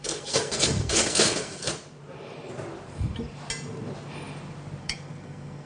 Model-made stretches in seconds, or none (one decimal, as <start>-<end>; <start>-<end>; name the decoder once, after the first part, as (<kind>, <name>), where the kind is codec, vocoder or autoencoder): 0.0-1.7 (codec, SNAC); 4.8-5.7